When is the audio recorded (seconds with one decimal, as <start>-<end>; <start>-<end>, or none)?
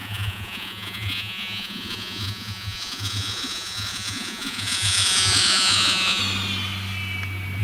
6.2-7.6